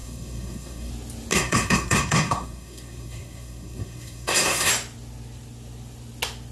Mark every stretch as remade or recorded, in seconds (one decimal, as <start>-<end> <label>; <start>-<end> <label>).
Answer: 0.0-0.9 remade; 0.9-1.3 recorded; 1.3-4.7 remade; 4.7-6.5 recorded